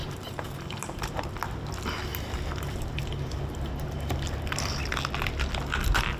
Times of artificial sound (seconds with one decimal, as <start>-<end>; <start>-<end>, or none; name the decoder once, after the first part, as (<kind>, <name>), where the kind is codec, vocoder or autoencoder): 0.0-1.3 (vocoder, BigVGAN v2); 2.1-4.8